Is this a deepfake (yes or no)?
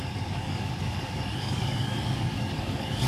yes